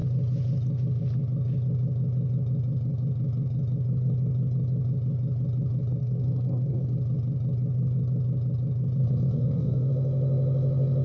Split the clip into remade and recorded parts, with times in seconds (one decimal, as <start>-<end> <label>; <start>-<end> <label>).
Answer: 0.0-6.0 recorded; 6.0-6.8 remade; 6.8-9.4 recorded; 9.4-9.9 remade; 9.9-11.0 recorded